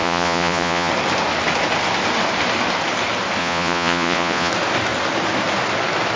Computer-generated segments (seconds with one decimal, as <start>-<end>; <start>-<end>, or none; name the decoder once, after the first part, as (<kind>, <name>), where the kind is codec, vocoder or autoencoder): 0.0-0.9 (vocoder, Vocos); 3.4-4.5